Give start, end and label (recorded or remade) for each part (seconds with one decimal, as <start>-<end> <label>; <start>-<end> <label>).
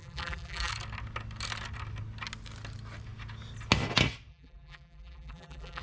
0.0-0.7 remade; 0.7-4.3 recorded; 4.3-5.8 remade